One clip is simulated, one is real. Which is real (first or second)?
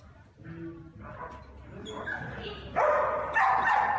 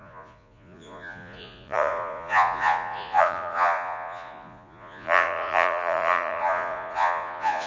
first